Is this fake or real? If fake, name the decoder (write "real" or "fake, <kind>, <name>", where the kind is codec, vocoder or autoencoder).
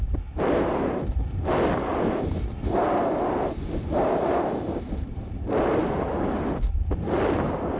real